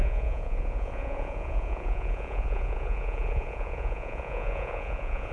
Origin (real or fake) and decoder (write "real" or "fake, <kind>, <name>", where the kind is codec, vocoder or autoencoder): fake, vocoder, Vocos